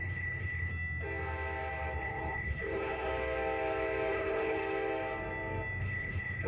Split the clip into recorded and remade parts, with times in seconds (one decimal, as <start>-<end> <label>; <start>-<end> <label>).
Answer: 0.0-0.7 remade; 0.7-2.0 recorded; 2.0-3.1 remade; 3.1-4.1 recorded; 4.1-4.6 remade; 4.6-5.8 recorded; 5.8-6.5 remade